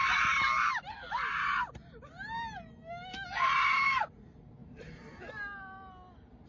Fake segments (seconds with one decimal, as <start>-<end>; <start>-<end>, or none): none